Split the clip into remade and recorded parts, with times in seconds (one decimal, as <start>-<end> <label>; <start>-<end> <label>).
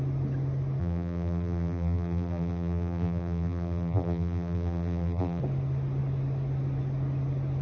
0.0-0.8 recorded; 0.8-5.4 remade; 5.4-7.6 recorded